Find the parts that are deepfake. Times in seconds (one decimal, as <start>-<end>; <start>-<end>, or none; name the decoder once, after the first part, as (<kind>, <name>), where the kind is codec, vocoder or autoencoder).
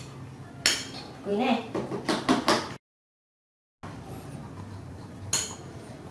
none